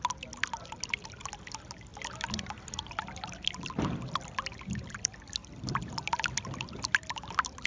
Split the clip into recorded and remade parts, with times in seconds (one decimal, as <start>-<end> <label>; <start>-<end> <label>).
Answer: 0.0-7.7 recorded